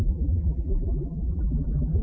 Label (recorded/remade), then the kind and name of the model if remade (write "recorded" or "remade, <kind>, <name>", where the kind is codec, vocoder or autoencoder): remade, vocoder, BigVGAN v2